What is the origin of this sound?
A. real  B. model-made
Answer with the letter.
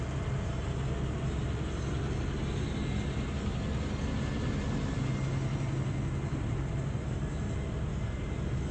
A